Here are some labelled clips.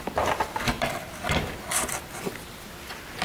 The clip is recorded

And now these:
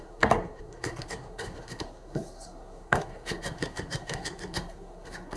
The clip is remade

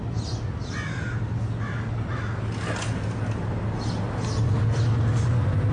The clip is recorded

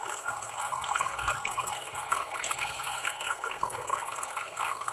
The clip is remade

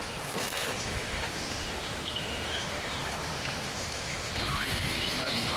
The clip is remade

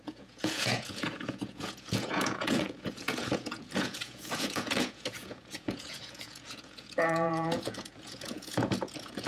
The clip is remade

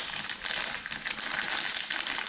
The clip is recorded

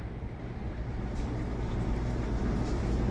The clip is remade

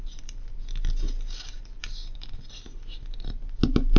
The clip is recorded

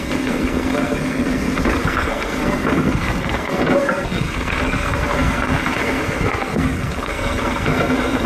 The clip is remade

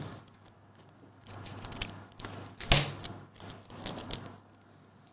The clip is recorded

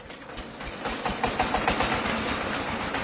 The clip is recorded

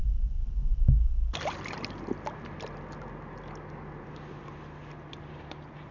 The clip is recorded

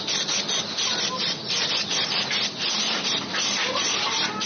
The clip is recorded